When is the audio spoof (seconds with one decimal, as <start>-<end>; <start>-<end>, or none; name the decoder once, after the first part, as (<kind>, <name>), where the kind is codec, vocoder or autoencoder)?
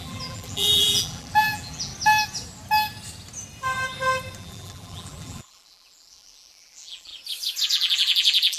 0.0-1.9 (vocoder, BigVGAN v2); 4.4-7.1; 7.7-8.6